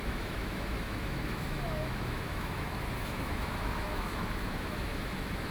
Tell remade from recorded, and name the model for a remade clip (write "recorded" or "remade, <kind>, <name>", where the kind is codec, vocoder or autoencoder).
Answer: remade, autoencoder, DAC-VAE